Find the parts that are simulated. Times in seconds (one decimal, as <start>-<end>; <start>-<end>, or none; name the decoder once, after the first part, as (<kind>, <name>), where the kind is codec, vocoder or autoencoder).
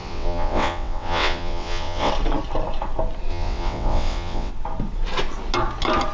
0.0-2.1 (vocoder, WaveNeXt); 3.3-4.5